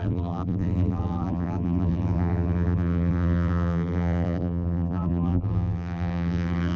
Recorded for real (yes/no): no